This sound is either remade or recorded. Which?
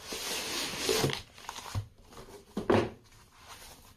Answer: recorded